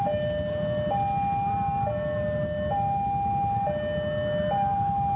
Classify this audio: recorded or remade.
recorded